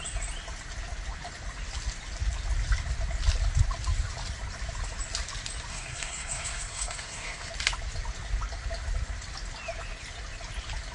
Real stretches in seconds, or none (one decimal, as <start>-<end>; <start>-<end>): 0.0-5.7; 7.5-10.9

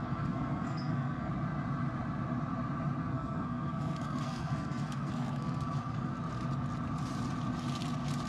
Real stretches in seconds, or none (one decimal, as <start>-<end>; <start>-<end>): 1.3-3.0; 6.1-8.3

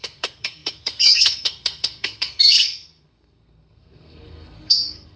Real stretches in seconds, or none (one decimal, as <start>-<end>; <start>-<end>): none